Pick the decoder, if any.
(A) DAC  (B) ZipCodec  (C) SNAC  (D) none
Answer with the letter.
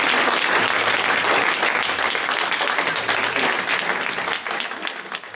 D